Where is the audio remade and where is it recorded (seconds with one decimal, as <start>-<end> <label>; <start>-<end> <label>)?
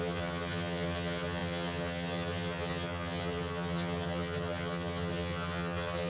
0.0-6.1 remade